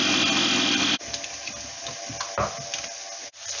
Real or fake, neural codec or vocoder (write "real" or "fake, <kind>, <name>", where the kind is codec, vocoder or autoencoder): real